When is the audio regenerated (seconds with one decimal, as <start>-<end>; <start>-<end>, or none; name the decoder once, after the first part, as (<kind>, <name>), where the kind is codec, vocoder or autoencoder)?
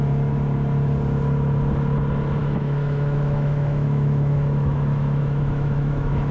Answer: 2.4-6.3 (autoencoder, DAC-VAE)